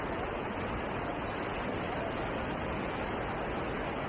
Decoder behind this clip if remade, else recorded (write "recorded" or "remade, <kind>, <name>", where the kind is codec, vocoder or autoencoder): recorded